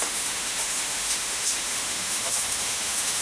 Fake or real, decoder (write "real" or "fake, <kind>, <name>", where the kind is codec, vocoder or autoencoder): fake, autoencoder, DAC-VAE